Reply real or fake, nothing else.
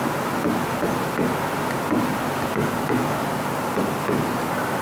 real